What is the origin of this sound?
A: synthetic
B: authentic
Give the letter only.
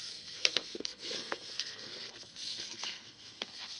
A